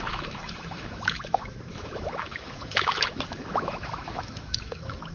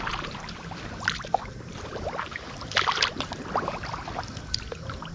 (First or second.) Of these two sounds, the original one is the second